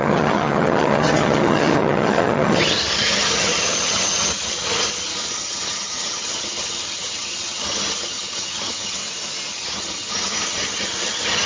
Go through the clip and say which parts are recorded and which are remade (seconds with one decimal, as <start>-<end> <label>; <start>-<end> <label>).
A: 0.0-9.0 remade; 9.0-9.5 recorded; 9.5-11.5 remade